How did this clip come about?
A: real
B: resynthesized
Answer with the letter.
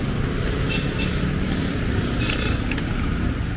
A